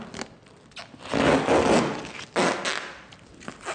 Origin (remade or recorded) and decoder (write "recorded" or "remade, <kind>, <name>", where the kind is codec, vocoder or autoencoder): recorded